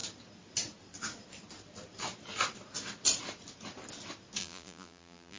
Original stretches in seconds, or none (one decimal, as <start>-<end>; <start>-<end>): 0.0-4.4